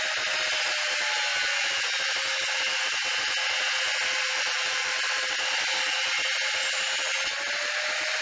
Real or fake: real